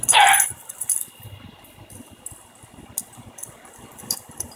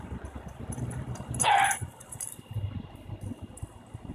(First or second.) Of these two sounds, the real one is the first